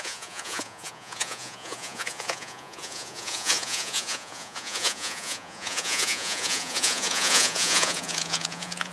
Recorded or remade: remade